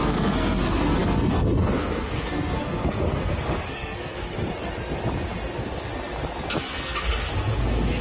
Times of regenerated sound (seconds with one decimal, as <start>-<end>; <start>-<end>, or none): 0.0-4.3; 6.6-8.0